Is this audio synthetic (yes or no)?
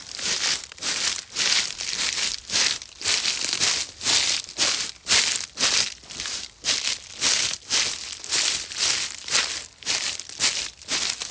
no